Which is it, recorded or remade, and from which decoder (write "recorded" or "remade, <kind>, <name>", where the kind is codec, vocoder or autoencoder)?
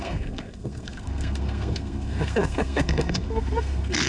remade, codec, SNAC